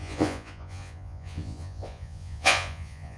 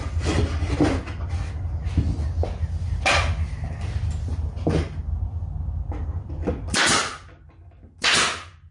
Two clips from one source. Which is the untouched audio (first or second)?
second